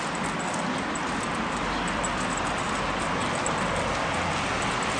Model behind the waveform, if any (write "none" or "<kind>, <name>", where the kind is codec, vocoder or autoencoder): none